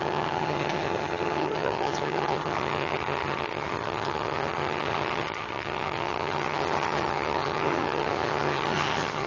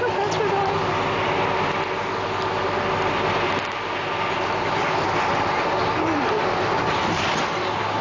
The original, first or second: second